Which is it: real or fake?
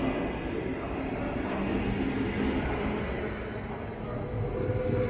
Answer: real